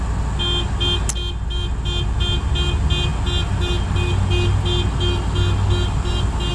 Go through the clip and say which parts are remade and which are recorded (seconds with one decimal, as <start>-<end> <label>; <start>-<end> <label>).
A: 0.0-6.5 recorded